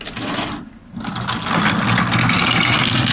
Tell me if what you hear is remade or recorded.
recorded